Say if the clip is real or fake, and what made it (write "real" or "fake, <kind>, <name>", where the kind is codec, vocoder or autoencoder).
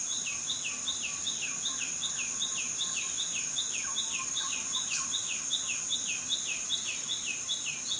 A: real